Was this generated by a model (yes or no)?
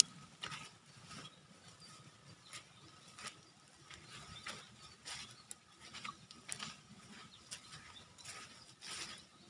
no